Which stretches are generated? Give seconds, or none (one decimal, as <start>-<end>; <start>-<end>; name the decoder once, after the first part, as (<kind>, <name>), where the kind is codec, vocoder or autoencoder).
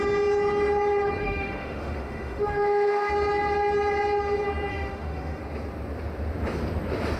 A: 1.2-3.1 (autoencoder, DAC-VAE); 4.7-5.4